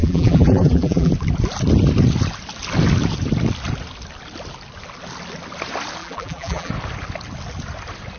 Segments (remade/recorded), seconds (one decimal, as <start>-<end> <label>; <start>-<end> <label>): 0.0-1.1 remade; 1.1-6.0 recorded; 6.0-6.7 remade; 6.7-8.2 recorded